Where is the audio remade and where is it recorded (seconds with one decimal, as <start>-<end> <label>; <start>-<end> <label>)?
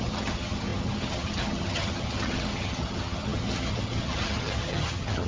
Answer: 0.0-5.3 remade